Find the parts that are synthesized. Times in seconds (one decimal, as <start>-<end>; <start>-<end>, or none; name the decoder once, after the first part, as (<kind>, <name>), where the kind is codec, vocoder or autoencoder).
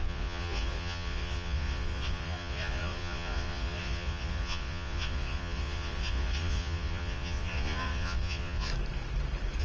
0.0-8.7 (vocoder, Vocos)